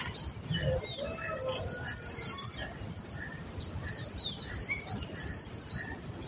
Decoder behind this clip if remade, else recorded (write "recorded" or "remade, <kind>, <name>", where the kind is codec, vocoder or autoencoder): recorded